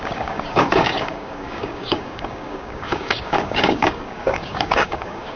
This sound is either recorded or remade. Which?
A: remade